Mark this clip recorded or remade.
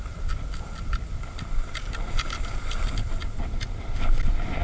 recorded